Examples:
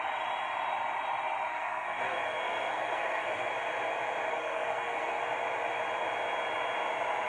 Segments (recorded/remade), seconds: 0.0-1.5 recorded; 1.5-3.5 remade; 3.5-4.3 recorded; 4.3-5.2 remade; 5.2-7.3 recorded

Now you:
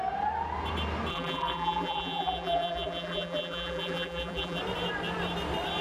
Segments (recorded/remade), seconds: 0.0-1.1 recorded; 1.1-4.6 remade; 4.6-5.8 recorded

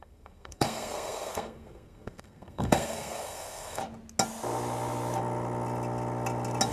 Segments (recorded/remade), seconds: 0.0-3.8 remade; 3.8-6.7 recorded

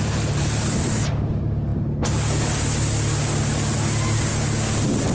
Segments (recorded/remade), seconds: 0.0-5.1 recorded

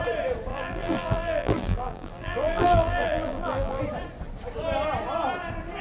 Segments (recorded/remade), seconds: 0.0-0.5 recorded; 0.5-3.8 remade; 3.8-5.8 recorded

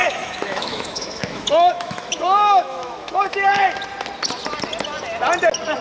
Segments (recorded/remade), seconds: 0.0-3.5 remade; 3.5-5.8 recorded

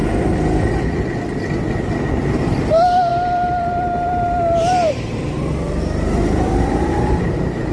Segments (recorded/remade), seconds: 0.0-3.1 recorded; 3.1-7.2 remade; 7.2-7.7 recorded